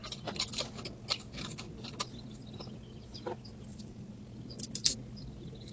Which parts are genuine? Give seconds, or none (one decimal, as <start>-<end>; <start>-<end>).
0.0-3.7; 4.2-5.7